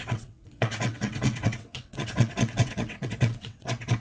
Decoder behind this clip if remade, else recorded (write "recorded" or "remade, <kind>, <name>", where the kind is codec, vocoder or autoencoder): remade, vocoder, WaveNeXt